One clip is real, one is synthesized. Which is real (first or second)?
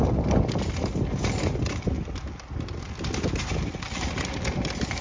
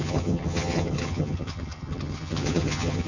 first